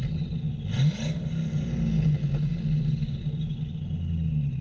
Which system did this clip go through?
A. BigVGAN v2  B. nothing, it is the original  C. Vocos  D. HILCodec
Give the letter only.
B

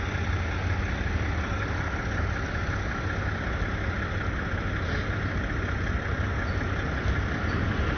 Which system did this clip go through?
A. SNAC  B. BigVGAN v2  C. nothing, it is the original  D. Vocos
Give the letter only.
C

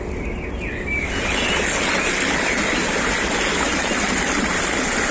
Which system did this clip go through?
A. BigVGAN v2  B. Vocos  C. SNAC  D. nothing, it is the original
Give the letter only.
D